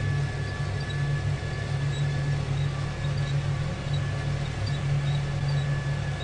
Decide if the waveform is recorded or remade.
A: recorded